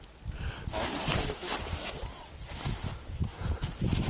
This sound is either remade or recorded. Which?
recorded